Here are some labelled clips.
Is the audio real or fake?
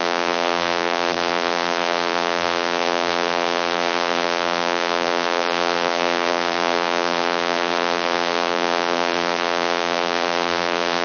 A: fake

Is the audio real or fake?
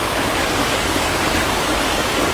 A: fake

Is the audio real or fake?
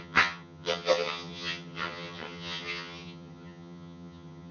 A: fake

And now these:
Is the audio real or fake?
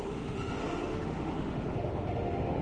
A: fake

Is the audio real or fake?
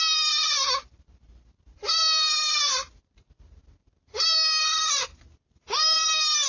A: real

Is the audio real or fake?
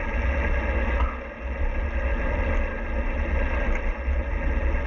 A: real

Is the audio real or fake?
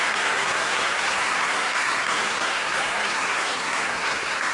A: fake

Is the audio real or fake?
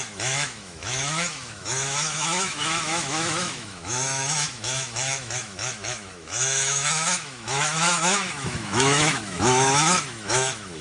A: fake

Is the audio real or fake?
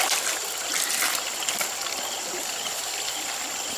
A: real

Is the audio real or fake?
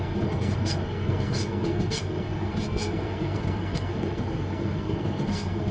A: fake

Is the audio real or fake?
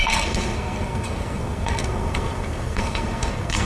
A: fake